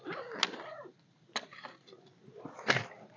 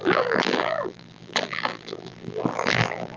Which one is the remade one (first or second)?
second